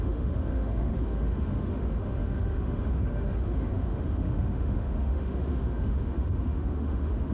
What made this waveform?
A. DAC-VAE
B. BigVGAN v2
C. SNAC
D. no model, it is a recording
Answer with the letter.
A